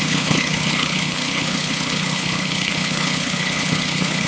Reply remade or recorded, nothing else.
remade